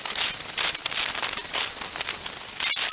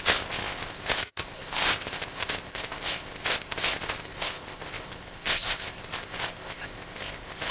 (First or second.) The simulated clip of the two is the second